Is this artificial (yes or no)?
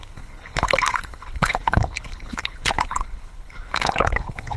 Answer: yes